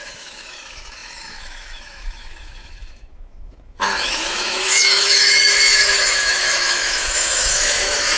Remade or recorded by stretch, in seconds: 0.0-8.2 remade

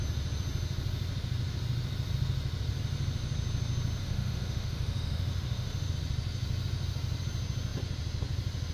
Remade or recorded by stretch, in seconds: 0.0-4.0 recorded; 4.0-5.9 remade; 5.9-8.7 recorded

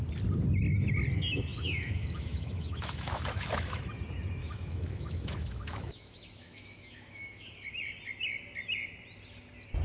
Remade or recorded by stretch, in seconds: 0.0-1.5 recorded; 1.5-3.8 remade; 3.8-4.4 recorded; 4.4-7.5 remade; 7.5-9.8 recorded